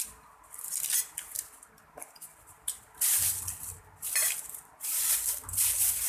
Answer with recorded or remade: remade